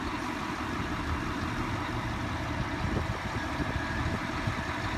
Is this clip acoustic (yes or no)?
yes